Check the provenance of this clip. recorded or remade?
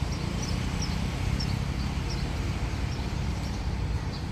recorded